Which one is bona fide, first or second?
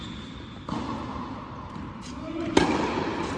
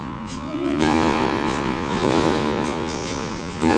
first